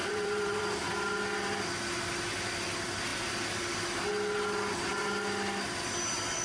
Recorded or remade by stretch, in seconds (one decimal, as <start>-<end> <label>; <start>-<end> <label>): 0.0-0.6 remade; 0.6-6.4 recorded